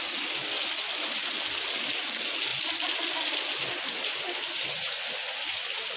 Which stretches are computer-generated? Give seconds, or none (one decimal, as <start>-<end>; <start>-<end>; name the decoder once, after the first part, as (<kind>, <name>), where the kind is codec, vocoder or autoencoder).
none